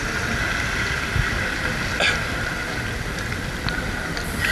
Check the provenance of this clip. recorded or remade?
recorded